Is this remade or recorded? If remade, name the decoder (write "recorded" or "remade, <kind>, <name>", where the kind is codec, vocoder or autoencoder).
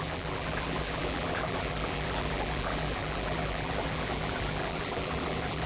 remade, vocoder, BigVGAN v2